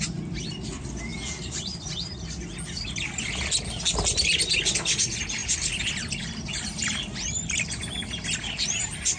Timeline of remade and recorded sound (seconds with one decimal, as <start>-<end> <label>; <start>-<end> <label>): 0.0-1.1 recorded; 1.1-1.9 remade; 1.9-5.4 recorded; 5.4-7.7 remade; 7.7-9.2 recorded